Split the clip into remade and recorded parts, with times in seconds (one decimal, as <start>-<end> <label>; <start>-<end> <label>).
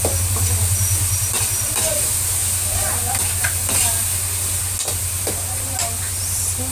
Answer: 0.0-6.7 recorded